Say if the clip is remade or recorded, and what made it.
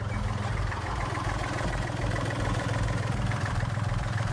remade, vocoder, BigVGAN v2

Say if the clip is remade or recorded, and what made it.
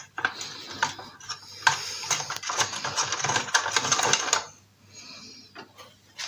recorded